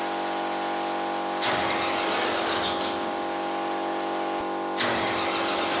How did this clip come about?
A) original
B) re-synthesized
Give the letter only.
A